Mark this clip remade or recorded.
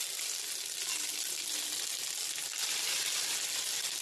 recorded